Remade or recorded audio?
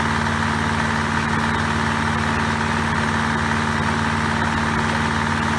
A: recorded